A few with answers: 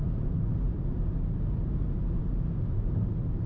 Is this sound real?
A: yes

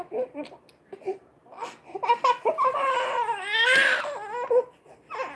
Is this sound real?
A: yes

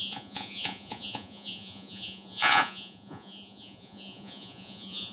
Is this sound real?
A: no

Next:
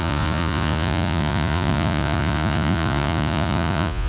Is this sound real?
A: no